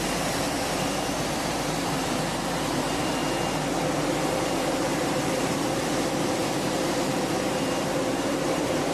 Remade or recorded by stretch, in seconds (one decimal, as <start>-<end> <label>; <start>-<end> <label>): 0.0-3.2 remade; 3.2-4.7 recorded; 4.7-6.4 remade; 6.4-7.0 recorded; 7.0-8.9 remade